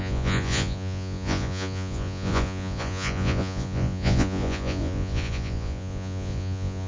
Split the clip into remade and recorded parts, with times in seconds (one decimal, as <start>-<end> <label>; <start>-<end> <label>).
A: 0.0-6.9 remade

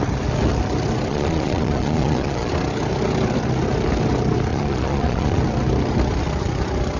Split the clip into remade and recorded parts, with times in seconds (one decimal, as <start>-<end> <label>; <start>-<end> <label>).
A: 0.0-1.1 recorded; 1.1-2.5 remade; 2.5-4.5 recorded; 4.5-5.4 remade; 5.4-7.0 recorded

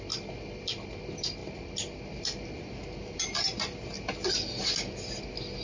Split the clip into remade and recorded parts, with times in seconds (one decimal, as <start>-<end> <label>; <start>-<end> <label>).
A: 0.0-5.6 recorded

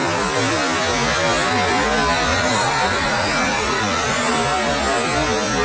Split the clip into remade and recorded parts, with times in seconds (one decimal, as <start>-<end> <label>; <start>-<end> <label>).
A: 0.0-2.3 recorded; 2.3-4.3 remade; 4.3-5.6 recorded

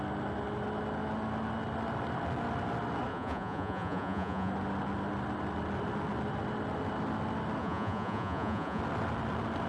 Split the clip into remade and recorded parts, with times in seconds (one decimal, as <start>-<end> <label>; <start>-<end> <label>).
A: 0.0-3.1 recorded; 3.1-4.5 remade; 4.5-7.6 recorded; 7.6-8.8 remade; 8.8-9.7 recorded

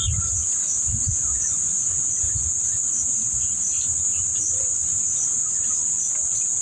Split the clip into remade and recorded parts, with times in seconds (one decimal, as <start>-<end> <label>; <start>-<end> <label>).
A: 0.0-1.5 recorded; 1.5-2.1 remade; 2.1-6.6 recorded

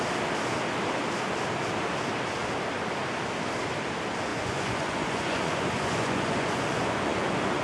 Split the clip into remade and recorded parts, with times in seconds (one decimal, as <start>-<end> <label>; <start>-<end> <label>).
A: 0.0-4.3 recorded; 4.3-7.6 remade